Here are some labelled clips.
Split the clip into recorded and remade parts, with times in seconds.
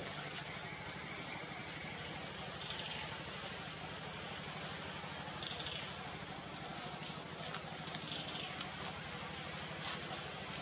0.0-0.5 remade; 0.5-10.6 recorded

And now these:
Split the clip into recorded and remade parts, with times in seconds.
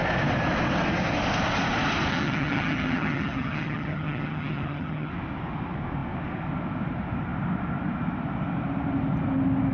0.0-2.1 recorded; 2.1-5.1 remade; 5.1-9.7 recorded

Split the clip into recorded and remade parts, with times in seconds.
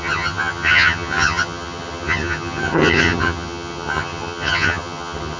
0.0-5.4 remade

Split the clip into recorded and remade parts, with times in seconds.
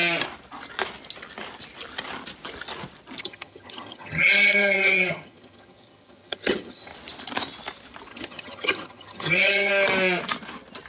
0.0-3.2 recorded; 3.2-6.9 remade; 6.9-8.1 recorded; 8.1-9.7 remade; 9.7-10.9 recorded